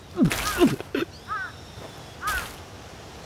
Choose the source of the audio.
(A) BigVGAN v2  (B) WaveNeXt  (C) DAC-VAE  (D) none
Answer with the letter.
D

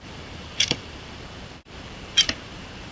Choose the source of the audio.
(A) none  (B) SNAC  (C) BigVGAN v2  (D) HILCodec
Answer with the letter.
C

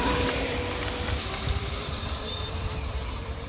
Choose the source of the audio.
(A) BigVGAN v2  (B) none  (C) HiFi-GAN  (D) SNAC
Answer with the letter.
A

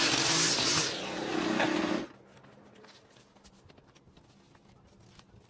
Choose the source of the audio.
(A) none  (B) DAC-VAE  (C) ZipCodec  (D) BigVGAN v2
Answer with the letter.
A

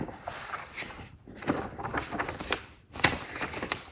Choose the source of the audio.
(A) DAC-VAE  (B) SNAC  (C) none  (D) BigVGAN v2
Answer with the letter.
D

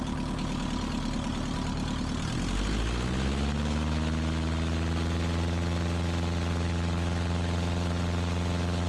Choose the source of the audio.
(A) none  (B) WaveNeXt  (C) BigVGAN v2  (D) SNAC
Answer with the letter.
A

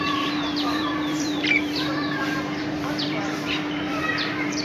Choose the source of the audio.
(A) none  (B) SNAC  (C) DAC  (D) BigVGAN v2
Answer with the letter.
D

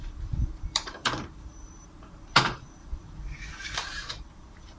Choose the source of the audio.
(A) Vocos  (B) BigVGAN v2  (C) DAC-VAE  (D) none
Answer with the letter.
B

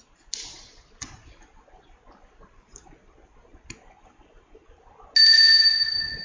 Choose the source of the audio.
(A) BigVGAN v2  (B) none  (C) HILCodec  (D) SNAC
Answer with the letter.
B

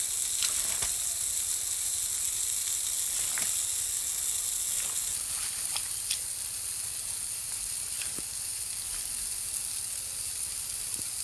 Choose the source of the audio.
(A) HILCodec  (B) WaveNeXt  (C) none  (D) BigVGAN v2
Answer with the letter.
C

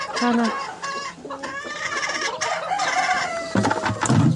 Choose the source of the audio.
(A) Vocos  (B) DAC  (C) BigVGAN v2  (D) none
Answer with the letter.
D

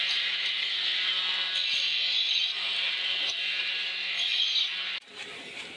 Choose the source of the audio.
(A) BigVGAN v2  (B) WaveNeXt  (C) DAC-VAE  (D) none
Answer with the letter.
A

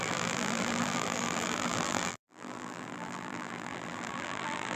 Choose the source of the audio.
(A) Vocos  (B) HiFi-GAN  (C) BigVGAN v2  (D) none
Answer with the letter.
C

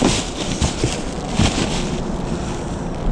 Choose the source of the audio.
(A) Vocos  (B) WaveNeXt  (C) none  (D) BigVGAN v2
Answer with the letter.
C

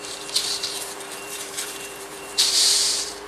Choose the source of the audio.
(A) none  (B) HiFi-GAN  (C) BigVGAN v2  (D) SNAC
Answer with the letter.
C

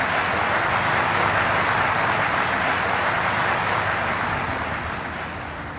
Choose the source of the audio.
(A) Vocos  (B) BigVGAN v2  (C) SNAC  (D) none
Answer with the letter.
D